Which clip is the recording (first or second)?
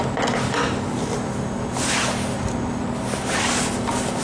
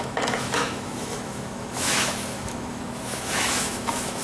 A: first